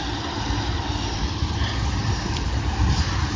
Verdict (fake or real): real